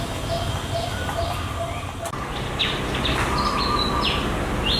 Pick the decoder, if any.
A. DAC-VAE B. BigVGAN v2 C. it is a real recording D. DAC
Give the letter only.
C